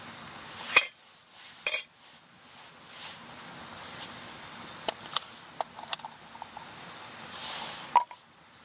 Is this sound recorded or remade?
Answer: recorded